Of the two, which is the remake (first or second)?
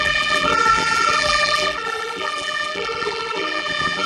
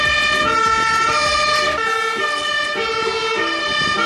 first